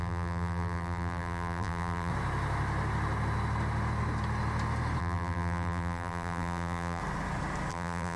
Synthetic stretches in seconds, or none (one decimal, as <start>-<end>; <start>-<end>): 0.0-2.1; 5.0-7.0; 7.7-8.2